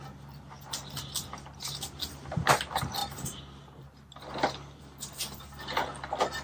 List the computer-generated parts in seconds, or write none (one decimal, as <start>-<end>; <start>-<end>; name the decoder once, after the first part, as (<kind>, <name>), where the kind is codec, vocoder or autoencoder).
none